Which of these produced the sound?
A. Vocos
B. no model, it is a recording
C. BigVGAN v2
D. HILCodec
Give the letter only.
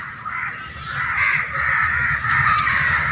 C